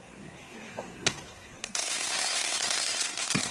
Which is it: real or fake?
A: fake